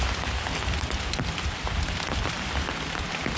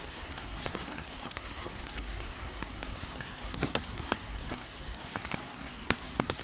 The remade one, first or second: second